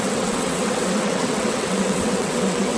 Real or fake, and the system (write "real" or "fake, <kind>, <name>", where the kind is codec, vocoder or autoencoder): fake, vocoder, WaveNeXt